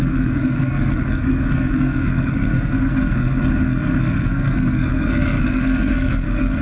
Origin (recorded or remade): remade